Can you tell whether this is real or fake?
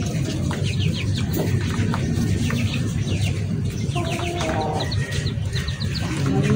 real